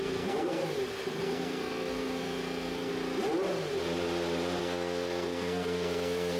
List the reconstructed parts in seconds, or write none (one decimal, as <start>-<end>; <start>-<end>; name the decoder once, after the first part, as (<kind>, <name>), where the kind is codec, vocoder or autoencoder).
0.0-0.6 (codec, SNAC); 1.2-2.9; 4.6-6.4